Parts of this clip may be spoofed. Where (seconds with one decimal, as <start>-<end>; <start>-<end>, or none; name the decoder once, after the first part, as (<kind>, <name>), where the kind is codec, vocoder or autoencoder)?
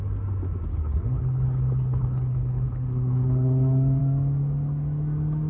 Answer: 0.7-4.0 (codec, HILCodec)